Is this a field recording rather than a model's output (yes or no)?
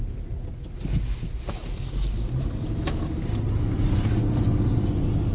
yes